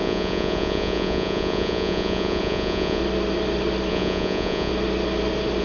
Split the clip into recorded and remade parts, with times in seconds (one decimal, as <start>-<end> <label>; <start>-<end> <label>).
0.0-3.0 remade; 3.0-3.9 recorded; 3.9-4.7 remade; 4.7-5.6 recorded